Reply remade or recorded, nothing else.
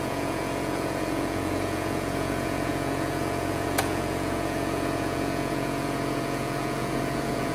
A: remade